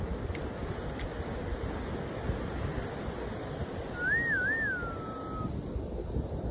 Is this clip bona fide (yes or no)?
yes